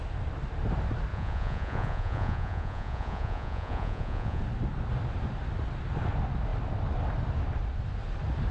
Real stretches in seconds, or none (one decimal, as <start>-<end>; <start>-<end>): 0.0-1.1; 4.4-8.5